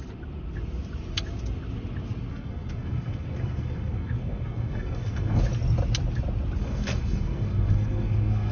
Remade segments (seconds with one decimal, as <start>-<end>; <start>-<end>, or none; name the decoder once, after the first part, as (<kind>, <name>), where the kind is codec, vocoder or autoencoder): 2.3-5.4 (codec, SNAC); 6.6-8.5